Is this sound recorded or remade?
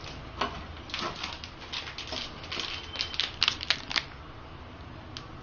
recorded